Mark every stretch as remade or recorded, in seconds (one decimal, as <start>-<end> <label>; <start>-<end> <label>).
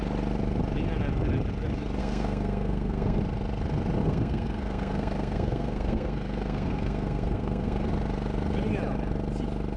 0.0-2.0 recorded; 2.0-3.2 remade; 3.2-4.0 recorded; 4.0-7.9 remade; 7.9-9.8 recorded